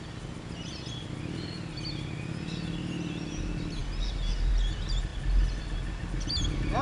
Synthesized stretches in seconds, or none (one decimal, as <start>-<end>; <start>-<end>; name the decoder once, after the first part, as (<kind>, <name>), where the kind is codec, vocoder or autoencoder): none